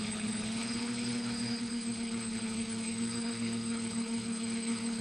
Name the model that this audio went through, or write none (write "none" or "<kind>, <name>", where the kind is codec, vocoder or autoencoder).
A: codec, HILCodec